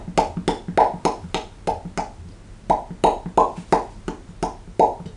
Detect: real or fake real